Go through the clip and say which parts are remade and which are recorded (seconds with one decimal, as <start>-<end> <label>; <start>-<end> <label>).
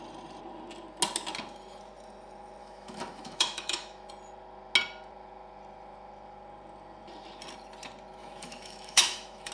0.0-2.6 recorded; 2.6-4.1 remade; 4.1-8.2 recorded; 8.2-9.5 remade